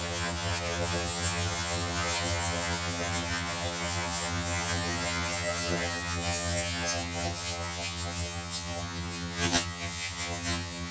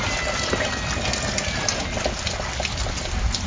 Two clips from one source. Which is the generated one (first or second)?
first